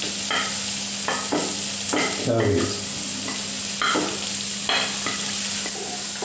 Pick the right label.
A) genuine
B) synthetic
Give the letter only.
A